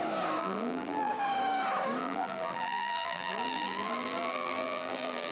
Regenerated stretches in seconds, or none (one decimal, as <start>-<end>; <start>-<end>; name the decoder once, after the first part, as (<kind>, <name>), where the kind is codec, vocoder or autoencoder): 0.4-1.1 (vocoder, BigVGAN v2); 2.0-5.3